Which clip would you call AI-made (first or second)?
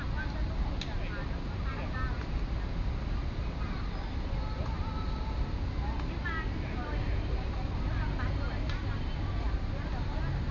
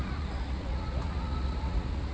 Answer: second